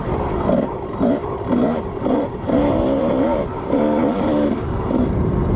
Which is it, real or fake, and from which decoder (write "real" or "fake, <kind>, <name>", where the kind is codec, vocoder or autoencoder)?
fake, vocoder, BigVGAN v2